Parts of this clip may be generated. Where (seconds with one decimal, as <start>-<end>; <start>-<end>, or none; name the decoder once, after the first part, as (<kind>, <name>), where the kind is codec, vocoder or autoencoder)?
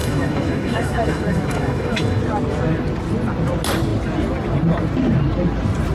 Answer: 0.0-2.2 (autoencoder, DAC-VAE)